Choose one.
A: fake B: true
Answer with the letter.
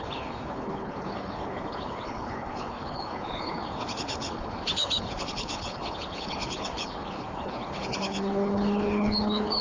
A